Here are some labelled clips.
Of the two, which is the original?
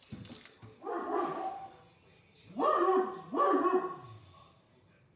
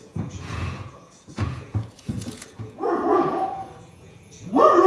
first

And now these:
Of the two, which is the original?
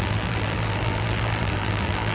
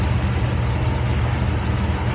second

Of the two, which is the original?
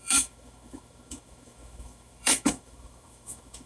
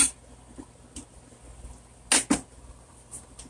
second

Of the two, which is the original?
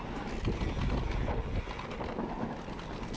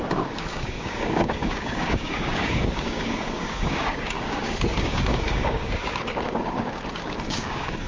first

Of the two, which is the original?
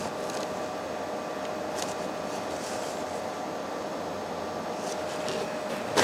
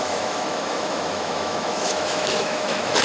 first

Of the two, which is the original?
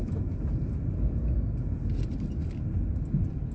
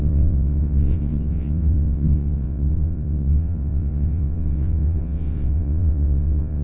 first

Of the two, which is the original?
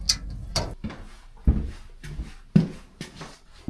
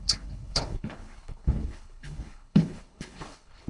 first